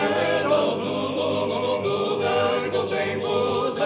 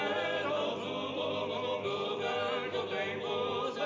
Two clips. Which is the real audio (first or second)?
second